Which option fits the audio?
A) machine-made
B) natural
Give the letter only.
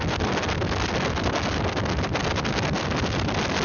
B